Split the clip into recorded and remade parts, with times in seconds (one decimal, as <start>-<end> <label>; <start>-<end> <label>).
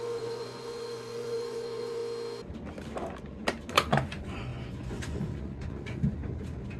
0.0-2.0 remade; 2.0-3.7 recorded; 3.7-6.2 remade; 6.2-6.8 recorded